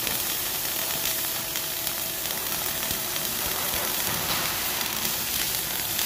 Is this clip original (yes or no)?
no